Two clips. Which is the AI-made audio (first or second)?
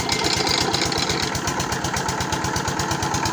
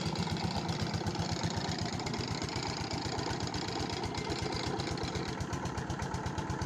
second